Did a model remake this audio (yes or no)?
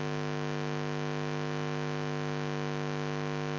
no